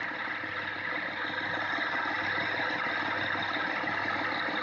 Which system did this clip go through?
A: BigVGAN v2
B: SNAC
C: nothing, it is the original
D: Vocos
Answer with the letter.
C